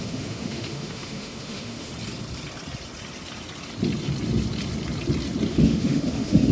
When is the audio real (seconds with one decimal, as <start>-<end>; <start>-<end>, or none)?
1.9-5.5